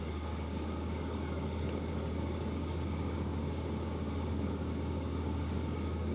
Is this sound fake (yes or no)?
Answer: yes